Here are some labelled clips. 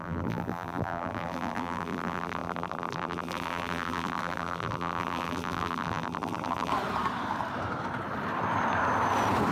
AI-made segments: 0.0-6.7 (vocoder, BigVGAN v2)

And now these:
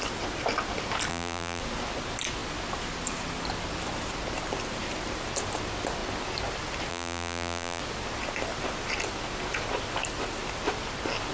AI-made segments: 1.1-1.6 (vocoder, BigVGAN v2); 6.9-7.8

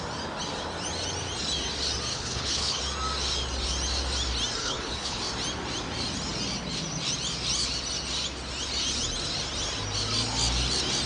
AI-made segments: 2.1-2.8 (codec, HILCodec); 4.6-5.2

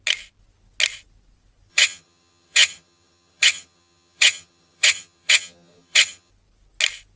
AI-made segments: 1.7-6.3 (vocoder, HiFi-GAN)

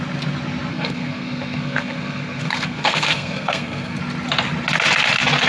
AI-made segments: 0.7-4.0 (codec, SNAC)

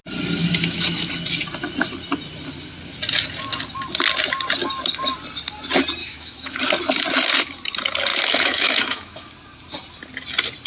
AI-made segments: 0.4-1.1 (autoencoder, DAC-VAE); 6.0-6.6; 8.1-9.3

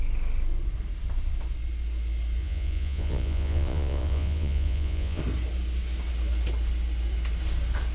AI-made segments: 2.4-5.2 (vocoder, Vocos)